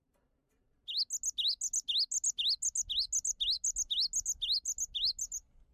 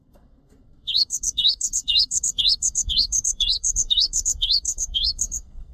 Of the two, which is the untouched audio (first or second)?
first